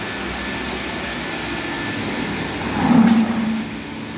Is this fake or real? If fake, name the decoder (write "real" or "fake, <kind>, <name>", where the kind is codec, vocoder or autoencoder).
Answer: real